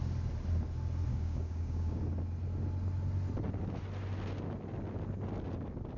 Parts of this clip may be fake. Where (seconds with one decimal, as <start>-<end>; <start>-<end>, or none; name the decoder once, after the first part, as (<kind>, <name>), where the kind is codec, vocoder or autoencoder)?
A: 1.1-2.0 (codec, DAC)